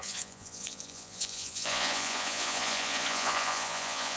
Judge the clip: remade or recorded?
remade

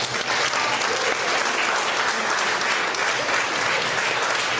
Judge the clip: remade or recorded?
recorded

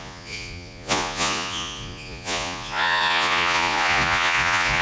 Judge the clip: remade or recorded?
remade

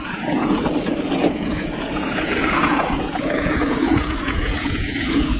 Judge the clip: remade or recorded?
remade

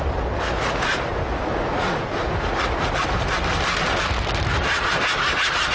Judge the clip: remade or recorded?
recorded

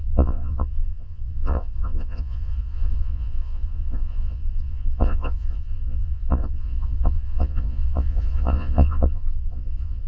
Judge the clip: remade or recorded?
remade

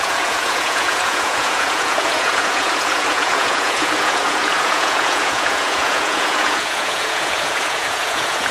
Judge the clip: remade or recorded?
remade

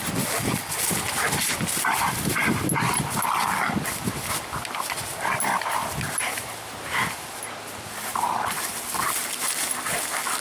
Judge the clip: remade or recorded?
recorded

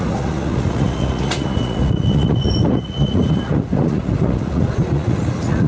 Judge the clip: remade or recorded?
remade